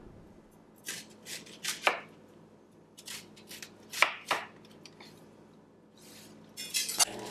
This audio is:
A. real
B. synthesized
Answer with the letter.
A